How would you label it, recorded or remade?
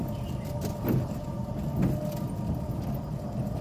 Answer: recorded